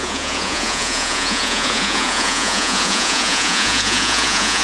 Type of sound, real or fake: fake